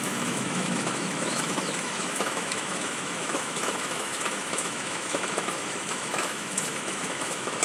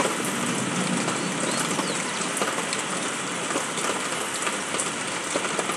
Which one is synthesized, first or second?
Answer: first